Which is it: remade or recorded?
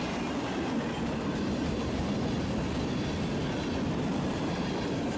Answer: recorded